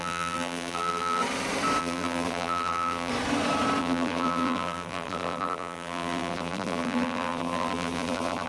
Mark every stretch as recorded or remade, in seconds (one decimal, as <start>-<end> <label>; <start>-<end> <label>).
0.0-1.2 remade; 1.2-1.8 recorded; 1.8-3.1 remade; 3.1-3.8 recorded; 3.8-8.5 remade